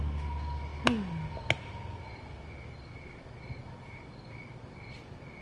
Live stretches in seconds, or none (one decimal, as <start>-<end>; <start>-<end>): 0.0-5.4